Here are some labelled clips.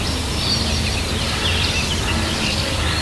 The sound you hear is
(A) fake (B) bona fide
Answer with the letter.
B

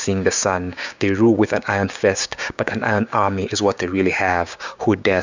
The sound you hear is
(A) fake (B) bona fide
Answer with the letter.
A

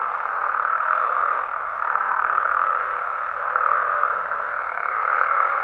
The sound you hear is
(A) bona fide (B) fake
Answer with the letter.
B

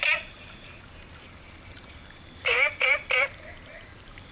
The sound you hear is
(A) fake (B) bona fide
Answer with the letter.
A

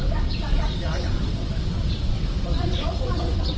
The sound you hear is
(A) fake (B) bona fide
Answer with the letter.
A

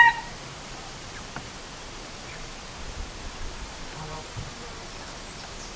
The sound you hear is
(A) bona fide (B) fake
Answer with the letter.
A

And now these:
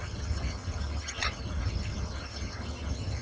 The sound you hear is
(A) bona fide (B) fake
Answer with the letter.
B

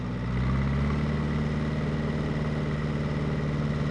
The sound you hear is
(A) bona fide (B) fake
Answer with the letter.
A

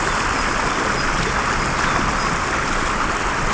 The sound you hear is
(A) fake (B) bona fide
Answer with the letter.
B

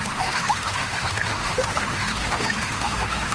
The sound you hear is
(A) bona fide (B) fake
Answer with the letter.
B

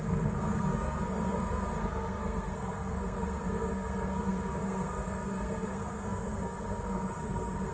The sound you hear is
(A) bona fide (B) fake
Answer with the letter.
B